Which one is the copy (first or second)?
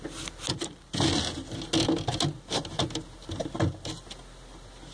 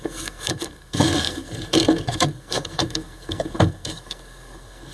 second